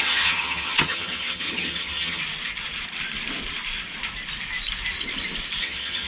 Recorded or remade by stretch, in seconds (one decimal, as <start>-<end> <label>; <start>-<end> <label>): 0.0-2.2 remade; 2.2-5.6 recorded; 5.6-6.1 remade